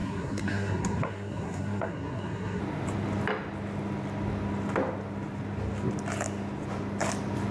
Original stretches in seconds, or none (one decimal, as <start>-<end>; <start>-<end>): 2.6-7.5